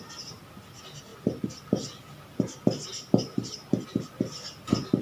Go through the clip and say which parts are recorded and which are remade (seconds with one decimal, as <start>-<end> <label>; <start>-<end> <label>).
0.0-5.0 recorded